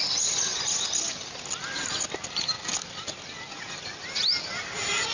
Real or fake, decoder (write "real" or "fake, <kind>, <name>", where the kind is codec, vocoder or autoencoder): real